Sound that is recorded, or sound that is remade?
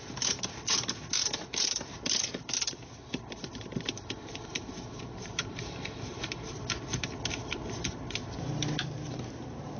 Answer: remade